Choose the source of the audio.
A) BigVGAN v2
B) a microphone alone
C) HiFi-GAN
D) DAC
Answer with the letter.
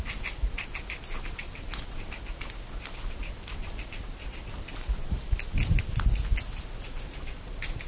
B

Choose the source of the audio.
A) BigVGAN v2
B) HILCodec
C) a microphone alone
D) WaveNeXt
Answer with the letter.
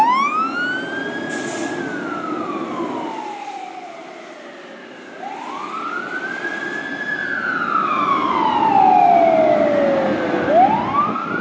C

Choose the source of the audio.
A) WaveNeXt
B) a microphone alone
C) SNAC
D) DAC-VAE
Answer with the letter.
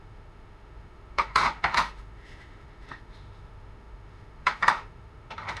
D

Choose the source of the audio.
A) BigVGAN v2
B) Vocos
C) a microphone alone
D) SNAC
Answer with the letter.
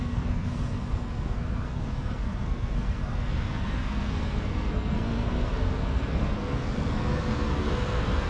D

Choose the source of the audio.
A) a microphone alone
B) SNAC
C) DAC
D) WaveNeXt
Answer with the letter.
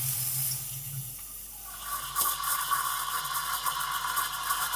A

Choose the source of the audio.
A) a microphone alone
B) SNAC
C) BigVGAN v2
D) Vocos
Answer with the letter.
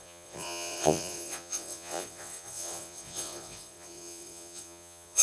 D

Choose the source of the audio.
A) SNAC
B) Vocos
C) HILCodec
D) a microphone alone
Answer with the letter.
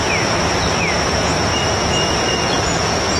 B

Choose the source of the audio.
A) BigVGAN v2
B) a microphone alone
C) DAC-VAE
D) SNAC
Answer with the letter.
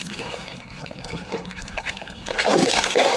D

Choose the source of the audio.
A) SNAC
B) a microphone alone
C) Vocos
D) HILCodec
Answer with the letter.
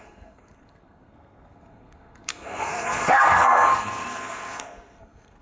A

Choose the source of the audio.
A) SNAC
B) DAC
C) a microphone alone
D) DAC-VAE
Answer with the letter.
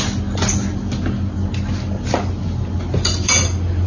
C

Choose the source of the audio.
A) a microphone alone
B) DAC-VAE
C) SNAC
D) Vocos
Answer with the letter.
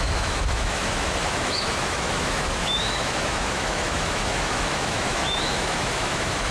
B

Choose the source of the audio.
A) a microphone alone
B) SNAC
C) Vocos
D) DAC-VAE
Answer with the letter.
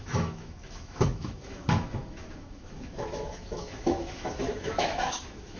D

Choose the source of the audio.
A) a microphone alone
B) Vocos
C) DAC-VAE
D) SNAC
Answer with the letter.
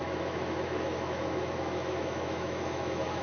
C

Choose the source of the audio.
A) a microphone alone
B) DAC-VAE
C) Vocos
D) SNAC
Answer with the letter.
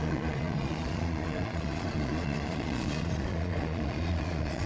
C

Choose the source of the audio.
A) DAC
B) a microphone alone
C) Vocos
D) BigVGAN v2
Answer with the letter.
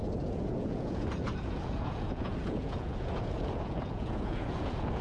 C